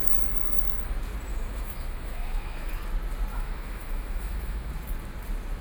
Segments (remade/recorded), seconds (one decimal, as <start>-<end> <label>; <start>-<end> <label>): 0.0-0.8 remade; 0.8-1.3 recorded; 1.3-2.7 remade; 2.7-3.3 recorded; 3.3-4.7 remade; 4.7-5.6 recorded